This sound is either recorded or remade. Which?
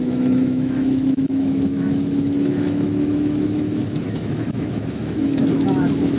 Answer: remade